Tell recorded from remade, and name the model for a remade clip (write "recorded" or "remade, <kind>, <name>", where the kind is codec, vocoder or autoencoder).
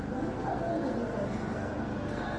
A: remade, codec, SNAC